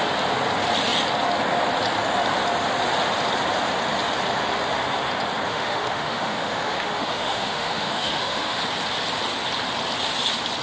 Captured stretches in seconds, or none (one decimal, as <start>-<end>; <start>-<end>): 0.0-5.5; 8.6-10.6